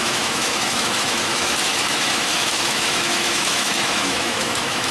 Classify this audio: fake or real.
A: fake